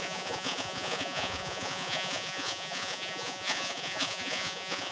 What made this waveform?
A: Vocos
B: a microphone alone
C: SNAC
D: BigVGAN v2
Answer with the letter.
A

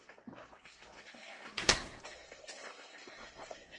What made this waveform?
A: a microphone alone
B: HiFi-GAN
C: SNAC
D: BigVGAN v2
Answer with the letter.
C